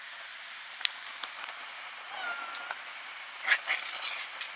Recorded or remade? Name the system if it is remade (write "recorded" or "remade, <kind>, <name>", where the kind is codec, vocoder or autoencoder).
recorded